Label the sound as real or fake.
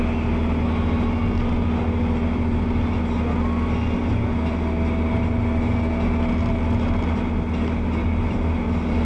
real